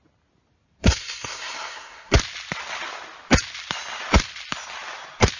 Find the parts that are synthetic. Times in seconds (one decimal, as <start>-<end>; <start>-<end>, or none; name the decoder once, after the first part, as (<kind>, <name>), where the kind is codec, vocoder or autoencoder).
0.8-2.1 (codec, SNAC)